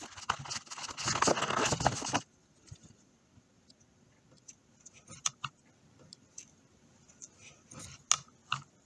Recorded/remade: recorded